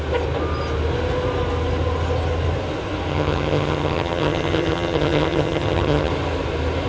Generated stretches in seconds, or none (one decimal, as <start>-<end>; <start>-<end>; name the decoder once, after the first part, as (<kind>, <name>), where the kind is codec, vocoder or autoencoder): 3.1-6.1 (vocoder, HiFi-GAN)